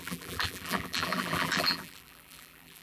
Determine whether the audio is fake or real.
fake